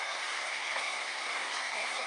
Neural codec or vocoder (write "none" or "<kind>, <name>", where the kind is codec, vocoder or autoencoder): codec, SNAC